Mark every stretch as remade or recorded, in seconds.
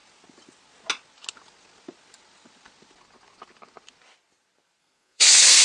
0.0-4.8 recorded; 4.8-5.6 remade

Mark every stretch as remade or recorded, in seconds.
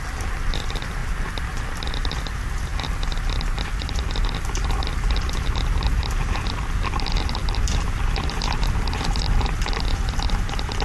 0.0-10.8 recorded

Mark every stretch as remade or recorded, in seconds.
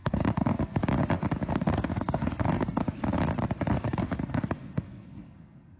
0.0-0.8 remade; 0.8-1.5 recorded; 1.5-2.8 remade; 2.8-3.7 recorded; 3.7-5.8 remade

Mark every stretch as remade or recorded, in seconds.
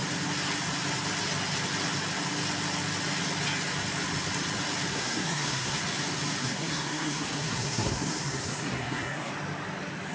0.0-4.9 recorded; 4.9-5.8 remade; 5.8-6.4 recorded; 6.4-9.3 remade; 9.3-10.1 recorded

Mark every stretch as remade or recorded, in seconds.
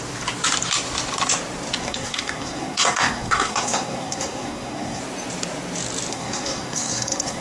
0.0-1.8 recorded; 1.8-5.0 remade; 5.0-6.1 recorded; 6.1-7.4 remade